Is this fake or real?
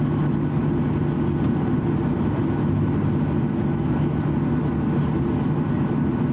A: real